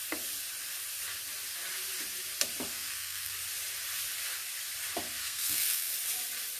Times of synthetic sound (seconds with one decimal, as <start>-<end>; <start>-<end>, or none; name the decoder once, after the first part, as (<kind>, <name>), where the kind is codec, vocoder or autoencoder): 2.7-3.3 (codec, SNAC); 5.2-5.9